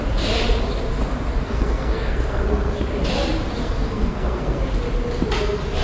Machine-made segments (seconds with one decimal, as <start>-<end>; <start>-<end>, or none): 1.4-2.8; 3.6-4.6